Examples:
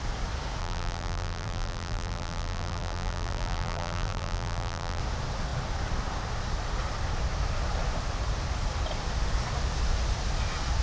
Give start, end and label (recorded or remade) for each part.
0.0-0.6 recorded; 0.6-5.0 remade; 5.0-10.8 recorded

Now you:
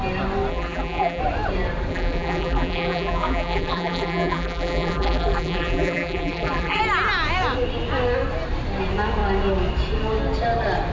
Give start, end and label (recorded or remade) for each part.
0.0-0.5 recorded; 0.5-1.2 remade; 1.2-1.9 recorded; 1.9-6.8 remade; 6.8-10.9 recorded